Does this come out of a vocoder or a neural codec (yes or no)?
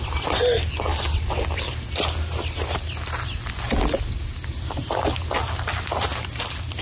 no